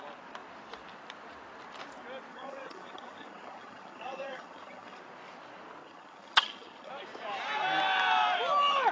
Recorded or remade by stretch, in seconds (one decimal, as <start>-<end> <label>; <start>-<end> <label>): 0.0-2.3 recorded; 2.3-5.0 remade; 5.0-5.8 recorded; 5.8-6.9 remade; 6.9-8.9 recorded